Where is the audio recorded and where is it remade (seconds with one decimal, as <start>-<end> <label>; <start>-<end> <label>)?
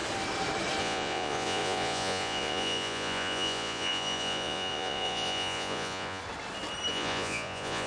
0.0-0.8 recorded; 0.8-6.2 remade; 6.2-6.9 recorded; 6.9-7.9 remade